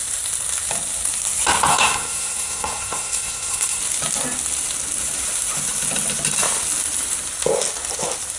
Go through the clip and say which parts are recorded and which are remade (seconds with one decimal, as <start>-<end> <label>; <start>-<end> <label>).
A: 0.0-1.7 recorded; 1.7-3.8 remade; 3.8-8.4 recorded